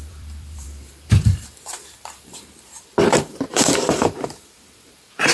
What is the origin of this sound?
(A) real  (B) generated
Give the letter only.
B